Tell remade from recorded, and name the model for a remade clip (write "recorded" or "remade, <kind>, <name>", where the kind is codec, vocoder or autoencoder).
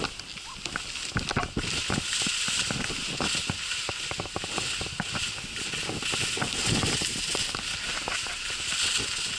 recorded